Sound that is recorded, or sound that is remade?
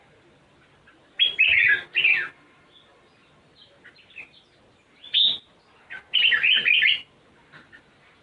recorded